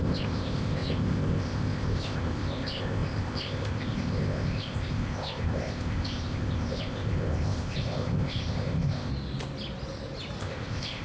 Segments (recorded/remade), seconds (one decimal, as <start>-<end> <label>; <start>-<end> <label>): 0.0-9.1 remade; 9.1-10.4 recorded; 10.4-11.0 remade